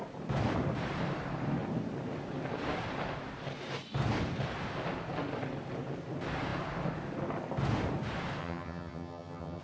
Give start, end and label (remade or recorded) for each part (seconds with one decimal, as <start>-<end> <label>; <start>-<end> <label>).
0.0-8.4 recorded; 8.4-9.6 remade

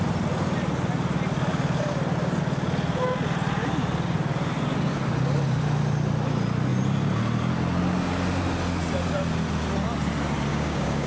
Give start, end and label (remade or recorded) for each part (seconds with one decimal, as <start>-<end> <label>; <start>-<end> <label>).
0.0-10.5 recorded; 10.5-11.1 remade

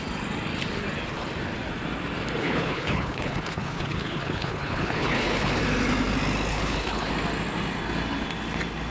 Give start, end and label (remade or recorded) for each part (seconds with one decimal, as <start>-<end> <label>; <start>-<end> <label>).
0.0-2.4 recorded; 2.4-5.6 remade; 5.6-6.5 recorded; 6.5-7.1 remade; 7.1-8.9 recorded

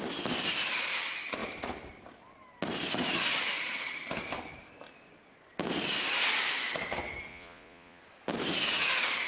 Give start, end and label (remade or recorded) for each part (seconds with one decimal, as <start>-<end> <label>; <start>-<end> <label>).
0.0-7.3 recorded; 7.3-8.0 remade; 8.0-9.3 recorded

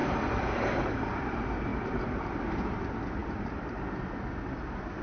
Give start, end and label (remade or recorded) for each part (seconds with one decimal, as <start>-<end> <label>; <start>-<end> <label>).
0.0-1.2 remade; 1.2-1.7 recorded; 1.7-2.8 remade; 2.8-3.2 recorded; 3.2-4.0 remade; 4.0-5.0 recorded

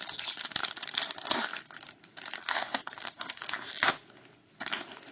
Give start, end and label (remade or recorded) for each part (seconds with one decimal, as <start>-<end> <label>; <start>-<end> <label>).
0.0-2.4 recorded; 2.4-3.5 remade; 3.5-5.1 recorded

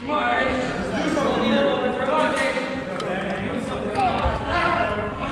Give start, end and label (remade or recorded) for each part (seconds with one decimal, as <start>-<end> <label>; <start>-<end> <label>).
0.0-0.7 remade; 0.7-3.9 recorded; 3.9-5.3 remade

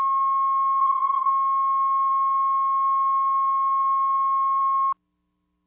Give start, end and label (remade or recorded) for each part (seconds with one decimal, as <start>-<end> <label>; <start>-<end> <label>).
0.0-0.8 recorded; 0.8-1.3 remade; 1.3-5.7 recorded